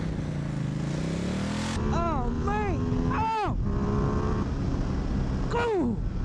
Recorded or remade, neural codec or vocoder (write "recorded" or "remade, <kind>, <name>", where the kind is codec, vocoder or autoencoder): recorded